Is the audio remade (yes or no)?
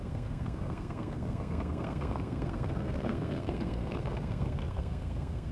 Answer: yes